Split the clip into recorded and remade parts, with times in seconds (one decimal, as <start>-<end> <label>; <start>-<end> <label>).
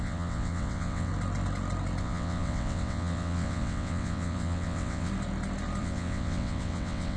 0.0-1.1 remade; 1.1-2.0 recorded; 2.0-5.1 remade; 5.1-5.8 recorded; 5.8-7.2 remade